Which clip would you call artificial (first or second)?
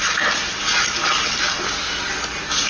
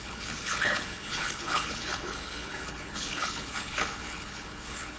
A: second